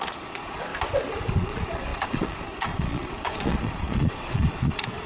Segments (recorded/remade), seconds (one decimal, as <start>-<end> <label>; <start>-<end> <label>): 0.0-0.7 remade; 0.7-1.3 recorded; 1.3-5.1 remade